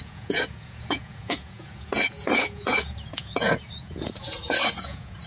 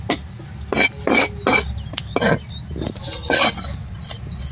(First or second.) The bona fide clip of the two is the second